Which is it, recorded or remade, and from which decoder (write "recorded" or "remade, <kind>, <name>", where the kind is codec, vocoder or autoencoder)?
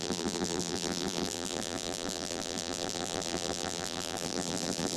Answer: remade, vocoder, BigVGAN v2